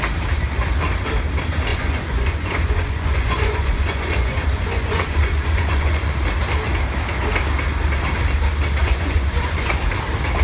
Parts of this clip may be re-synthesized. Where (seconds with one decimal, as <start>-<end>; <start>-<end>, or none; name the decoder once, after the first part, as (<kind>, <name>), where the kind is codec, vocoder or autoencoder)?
1.7-6.1 (vocoder, Vocos); 8.8-9.8